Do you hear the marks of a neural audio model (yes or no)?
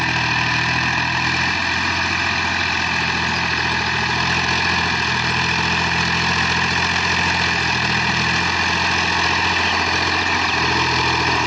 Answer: no